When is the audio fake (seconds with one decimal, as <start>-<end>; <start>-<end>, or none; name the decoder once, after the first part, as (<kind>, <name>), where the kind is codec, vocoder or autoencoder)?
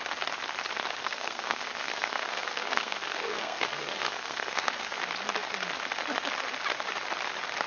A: 1.0-5.0 (codec, SNAC)